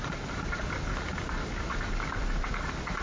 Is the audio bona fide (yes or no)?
yes